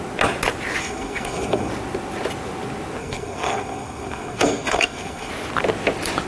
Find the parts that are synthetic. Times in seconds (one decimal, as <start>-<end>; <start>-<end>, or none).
0.8-1.7; 3.0-5.3

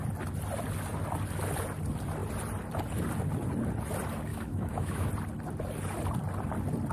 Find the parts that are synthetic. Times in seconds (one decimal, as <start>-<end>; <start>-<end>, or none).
4.3-5.1

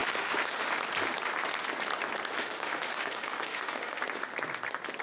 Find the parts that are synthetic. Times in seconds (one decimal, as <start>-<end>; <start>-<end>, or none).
0.0-0.8; 2.4-4.0